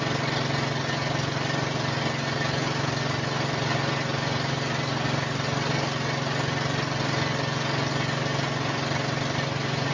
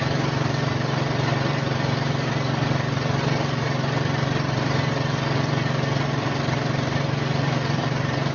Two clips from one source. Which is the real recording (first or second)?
first